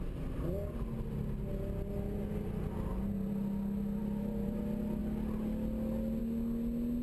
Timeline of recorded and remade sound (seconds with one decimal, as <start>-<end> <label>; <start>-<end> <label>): 0.0-4.0 recorded; 4.0-4.6 remade; 4.6-7.0 recorded